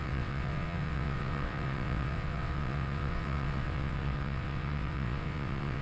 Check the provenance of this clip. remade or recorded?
remade